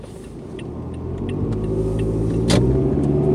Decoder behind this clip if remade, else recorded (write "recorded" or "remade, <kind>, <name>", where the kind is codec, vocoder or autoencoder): recorded